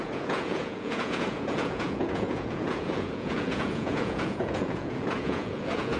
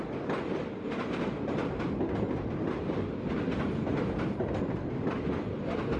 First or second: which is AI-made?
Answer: first